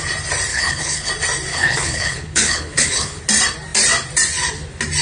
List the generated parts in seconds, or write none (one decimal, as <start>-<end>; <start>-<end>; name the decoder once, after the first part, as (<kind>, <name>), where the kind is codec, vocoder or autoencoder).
0.5-1.1 (codec, HILCodec); 1.5-3.2